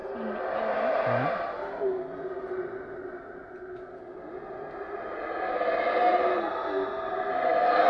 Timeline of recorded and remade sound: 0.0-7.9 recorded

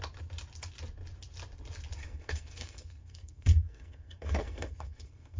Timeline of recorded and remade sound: 0.0-2.0 recorded; 2.0-5.4 remade

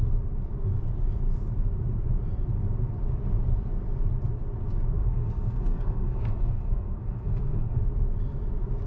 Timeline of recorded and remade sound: 0.0-5.0 recorded; 5.0-7.8 remade; 7.8-8.9 recorded

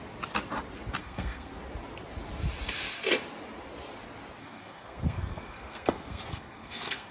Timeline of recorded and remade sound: 0.0-1.0 recorded; 1.0-1.6 remade; 1.6-4.4 recorded; 4.4-7.1 remade

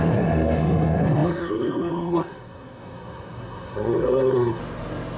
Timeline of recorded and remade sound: 0.0-4.6 remade; 4.6-5.2 recorded

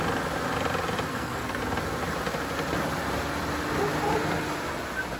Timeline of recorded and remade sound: 0.0-1.1 recorded; 1.1-1.6 remade; 1.6-5.2 recorded

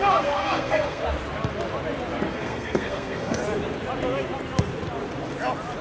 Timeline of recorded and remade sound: 0.0-1.0 remade; 1.0-2.3 recorded; 2.3-3.4 remade; 3.4-5.8 recorded

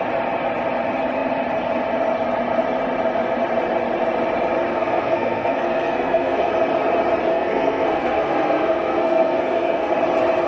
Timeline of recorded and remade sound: 0.0-4.7 recorded; 4.7-6.5 remade; 6.5-7.3 recorded; 7.3-9.9 remade; 9.9-10.5 recorded